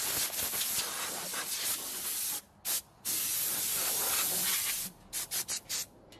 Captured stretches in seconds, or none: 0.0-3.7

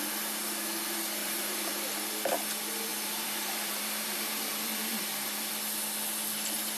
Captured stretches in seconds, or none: 0.0-1.2; 2.1-2.9; 4.4-4.9; 5.5-6.8